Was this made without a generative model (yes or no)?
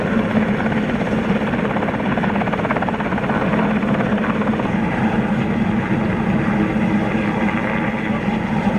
yes